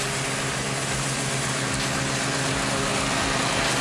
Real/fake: real